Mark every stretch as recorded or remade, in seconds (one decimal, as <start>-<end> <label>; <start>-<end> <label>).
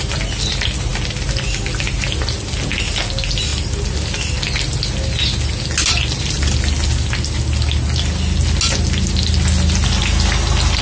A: 0.0-10.8 recorded